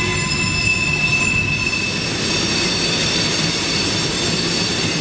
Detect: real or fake real